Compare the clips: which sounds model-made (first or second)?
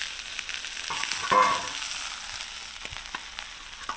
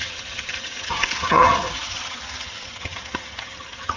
second